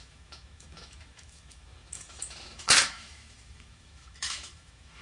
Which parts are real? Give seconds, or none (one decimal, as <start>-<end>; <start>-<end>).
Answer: none

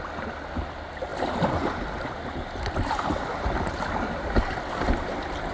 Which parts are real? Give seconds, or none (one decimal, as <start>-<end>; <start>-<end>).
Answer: 0.0-5.5

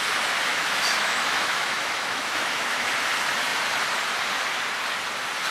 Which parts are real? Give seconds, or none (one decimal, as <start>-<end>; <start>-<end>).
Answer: 0.0-0.5; 2.9-5.5

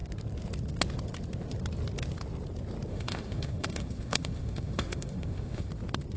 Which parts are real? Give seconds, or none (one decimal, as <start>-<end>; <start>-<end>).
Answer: 0.0-2.9; 5.7-6.2